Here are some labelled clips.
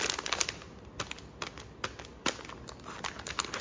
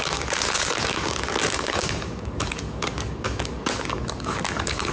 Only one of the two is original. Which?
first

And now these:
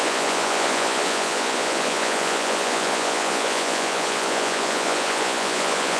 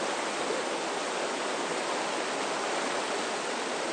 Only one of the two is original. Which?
second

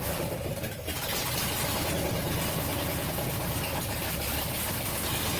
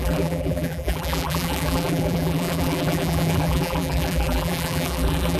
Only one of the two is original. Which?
first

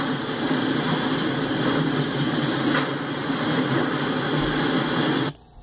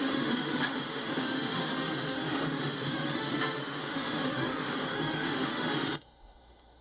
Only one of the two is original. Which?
first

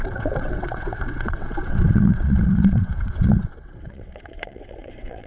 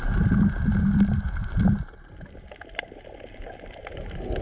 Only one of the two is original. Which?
second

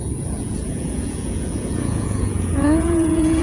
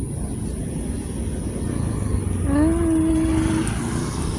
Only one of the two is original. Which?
second